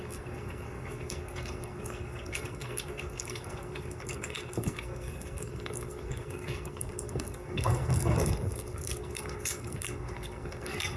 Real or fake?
fake